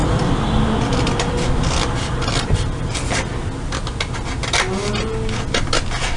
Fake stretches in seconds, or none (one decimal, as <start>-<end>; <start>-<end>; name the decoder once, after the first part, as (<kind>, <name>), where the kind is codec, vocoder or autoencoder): 0.0-1.5 (vocoder, BigVGAN v2)